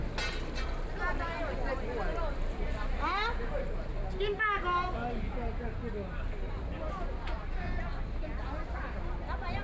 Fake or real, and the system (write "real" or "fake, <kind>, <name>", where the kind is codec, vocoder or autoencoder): real